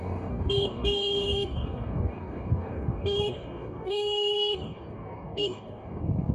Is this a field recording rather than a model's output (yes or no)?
no